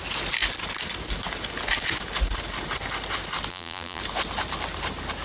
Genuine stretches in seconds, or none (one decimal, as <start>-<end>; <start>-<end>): 0.0-3.5; 4.0-5.2